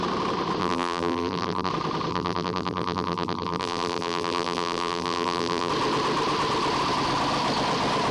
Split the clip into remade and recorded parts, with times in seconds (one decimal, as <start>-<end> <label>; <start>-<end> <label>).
0.0-0.6 recorded; 0.6-1.7 remade; 1.7-2.1 recorded; 2.1-5.7 remade; 5.7-8.1 recorded

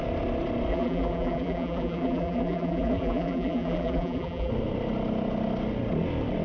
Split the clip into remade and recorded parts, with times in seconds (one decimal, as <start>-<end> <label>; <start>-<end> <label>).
0.0-0.7 recorded; 0.7-4.5 remade; 4.5-6.4 recorded

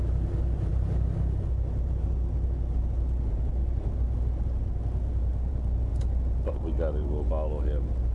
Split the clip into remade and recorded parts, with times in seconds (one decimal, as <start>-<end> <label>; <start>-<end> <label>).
0.0-5.9 recorded; 5.9-7.3 remade; 7.3-8.1 recorded

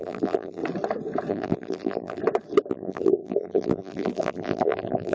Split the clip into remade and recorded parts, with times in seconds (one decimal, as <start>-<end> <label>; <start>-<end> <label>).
0.0-0.6 remade; 0.6-1.3 recorded; 1.3-2.2 remade; 2.2-2.7 recorded; 2.7-5.1 remade

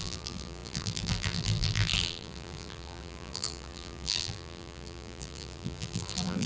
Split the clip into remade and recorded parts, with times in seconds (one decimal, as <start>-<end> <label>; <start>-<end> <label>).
0.0-6.5 remade

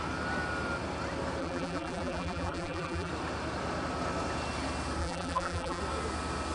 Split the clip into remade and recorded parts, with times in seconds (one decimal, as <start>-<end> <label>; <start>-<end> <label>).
0.0-1.4 recorded; 1.4-3.1 remade; 3.1-5.0 recorded; 5.0-5.8 remade; 5.8-6.5 recorded

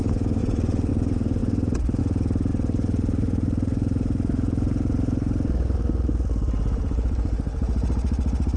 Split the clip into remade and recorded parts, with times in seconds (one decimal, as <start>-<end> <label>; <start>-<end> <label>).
0.0-0.4 recorded; 0.4-0.9 remade; 0.9-2.5 recorded; 2.5-5.8 remade; 5.8-8.6 recorded